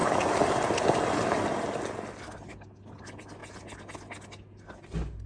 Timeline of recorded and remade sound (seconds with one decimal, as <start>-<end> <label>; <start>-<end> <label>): 0.0-5.3 recorded